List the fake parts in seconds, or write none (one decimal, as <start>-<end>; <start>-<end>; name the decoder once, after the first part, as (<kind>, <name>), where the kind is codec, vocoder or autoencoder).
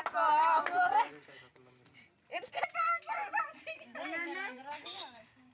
4.2-5.5 (codec, DAC)